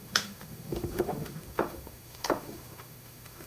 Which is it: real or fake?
fake